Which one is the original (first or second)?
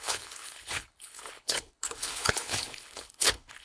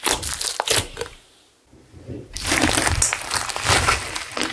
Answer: second